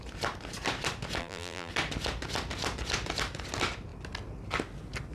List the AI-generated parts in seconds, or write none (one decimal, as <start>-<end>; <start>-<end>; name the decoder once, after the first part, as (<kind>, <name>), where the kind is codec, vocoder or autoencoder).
1.2-1.7 (vocoder, BigVGAN v2)